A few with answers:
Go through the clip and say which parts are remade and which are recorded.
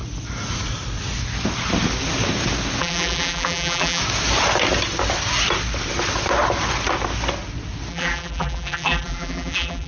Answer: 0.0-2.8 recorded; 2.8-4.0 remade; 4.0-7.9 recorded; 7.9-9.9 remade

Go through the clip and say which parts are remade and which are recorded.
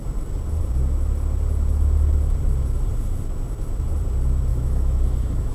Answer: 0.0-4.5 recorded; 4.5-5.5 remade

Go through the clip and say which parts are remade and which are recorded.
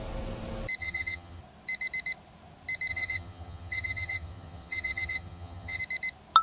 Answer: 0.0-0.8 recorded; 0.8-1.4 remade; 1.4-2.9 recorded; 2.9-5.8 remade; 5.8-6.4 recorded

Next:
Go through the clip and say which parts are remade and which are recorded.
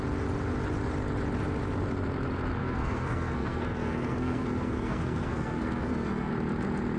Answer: 0.0-2.6 recorded; 2.6-6.3 remade; 6.3-7.0 recorded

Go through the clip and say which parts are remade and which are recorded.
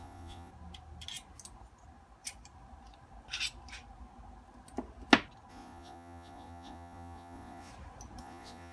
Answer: 0.0-0.5 remade; 0.5-5.5 recorded; 5.5-7.7 remade; 7.7-8.2 recorded; 8.2-8.7 remade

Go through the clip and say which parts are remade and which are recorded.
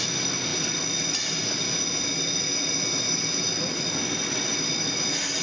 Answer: 0.0-5.4 recorded